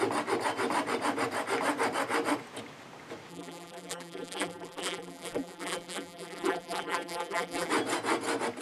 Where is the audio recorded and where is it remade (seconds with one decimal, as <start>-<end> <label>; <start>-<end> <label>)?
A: 0.0-3.3 recorded; 3.3-7.7 remade; 7.7-8.6 recorded